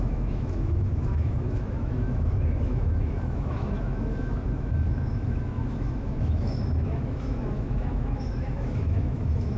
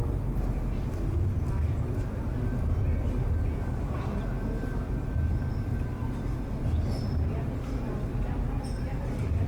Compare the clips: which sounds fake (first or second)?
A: first